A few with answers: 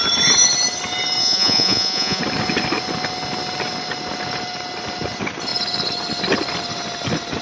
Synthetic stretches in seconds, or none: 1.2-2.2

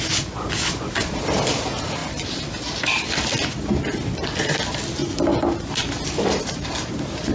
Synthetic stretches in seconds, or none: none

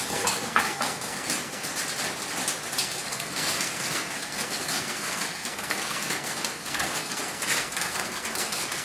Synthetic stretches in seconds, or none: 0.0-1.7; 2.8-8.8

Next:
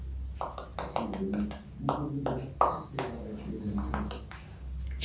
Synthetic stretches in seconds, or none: none